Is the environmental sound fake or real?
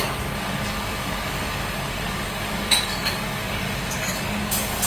fake